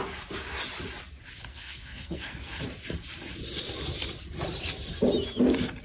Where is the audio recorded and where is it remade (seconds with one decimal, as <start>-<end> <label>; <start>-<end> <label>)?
0.0-1.5 recorded; 1.5-2.6 remade; 2.6-5.8 recorded